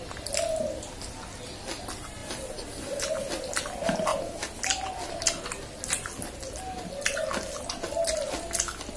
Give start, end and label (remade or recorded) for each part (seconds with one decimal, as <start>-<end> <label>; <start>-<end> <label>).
0.0-2.2 recorded; 2.2-3.0 remade; 3.0-9.0 recorded